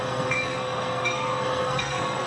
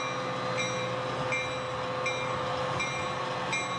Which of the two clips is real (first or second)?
second